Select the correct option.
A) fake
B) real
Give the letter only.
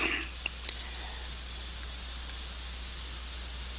B